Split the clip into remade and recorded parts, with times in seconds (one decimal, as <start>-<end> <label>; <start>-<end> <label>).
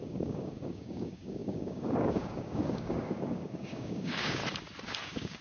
0.0-4.4 remade; 4.4-5.0 recorded; 5.0-5.4 remade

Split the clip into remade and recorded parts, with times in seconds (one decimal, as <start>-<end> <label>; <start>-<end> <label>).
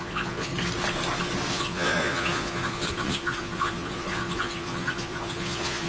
0.0-0.5 remade; 0.5-1.5 recorded; 1.5-5.9 remade